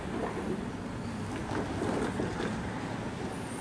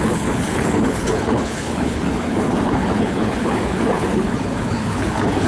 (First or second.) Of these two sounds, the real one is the first